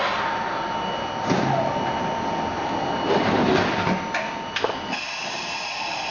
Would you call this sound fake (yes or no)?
no